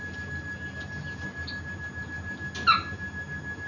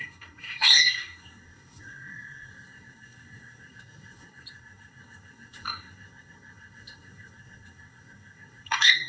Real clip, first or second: first